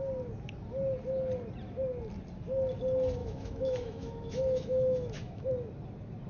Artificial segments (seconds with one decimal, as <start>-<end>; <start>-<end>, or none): 3.2-5.5